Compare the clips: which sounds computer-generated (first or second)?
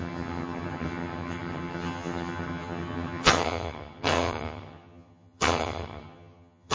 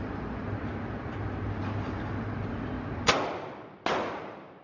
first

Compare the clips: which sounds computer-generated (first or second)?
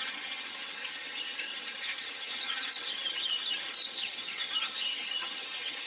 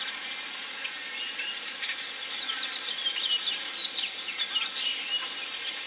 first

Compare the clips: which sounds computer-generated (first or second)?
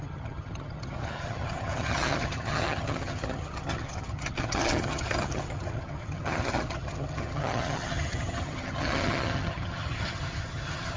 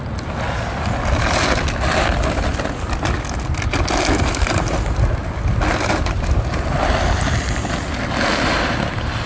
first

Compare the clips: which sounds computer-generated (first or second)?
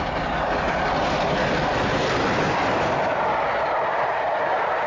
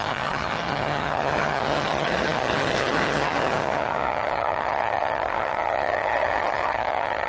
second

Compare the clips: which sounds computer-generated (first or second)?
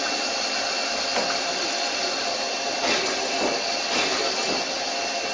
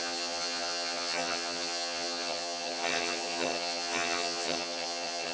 second